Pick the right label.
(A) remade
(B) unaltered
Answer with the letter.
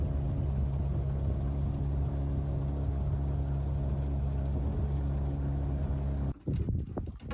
B